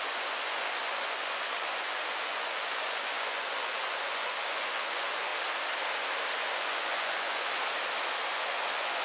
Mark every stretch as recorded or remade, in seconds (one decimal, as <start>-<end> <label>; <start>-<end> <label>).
0.0-5.3 remade; 5.3-6.4 recorded; 6.4-7.5 remade; 7.5-8.3 recorded; 8.3-9.0 remade